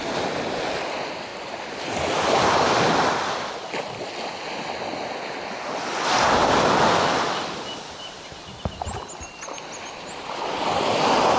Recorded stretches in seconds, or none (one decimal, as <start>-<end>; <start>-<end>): 0.0-11.4